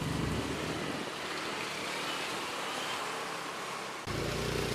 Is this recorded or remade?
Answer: recorded